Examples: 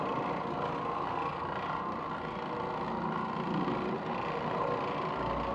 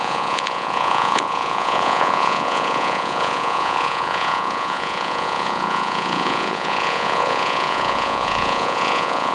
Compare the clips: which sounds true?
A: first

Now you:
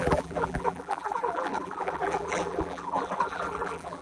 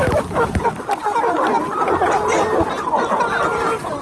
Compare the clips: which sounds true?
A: second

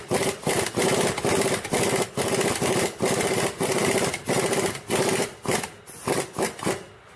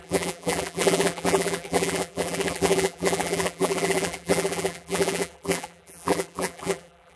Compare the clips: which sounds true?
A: first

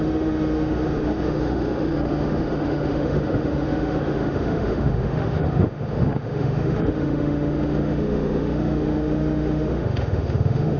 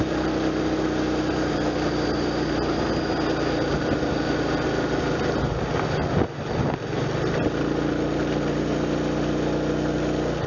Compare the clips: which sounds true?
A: second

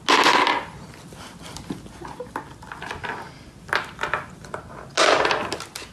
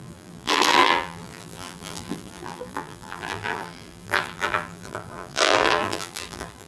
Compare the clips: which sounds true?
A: first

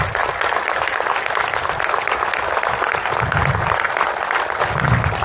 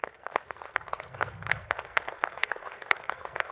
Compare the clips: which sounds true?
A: first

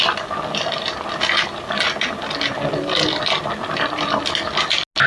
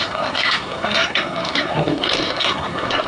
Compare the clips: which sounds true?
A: first